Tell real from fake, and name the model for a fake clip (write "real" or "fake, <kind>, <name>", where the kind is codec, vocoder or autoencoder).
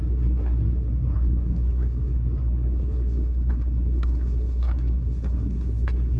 fake, codec, SNAC